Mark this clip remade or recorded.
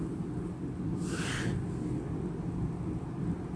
recorded